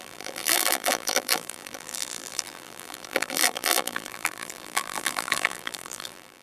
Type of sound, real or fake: fake